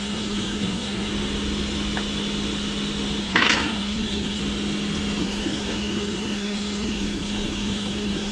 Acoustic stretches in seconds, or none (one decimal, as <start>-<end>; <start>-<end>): 1.1-3.2; 4.4-5.2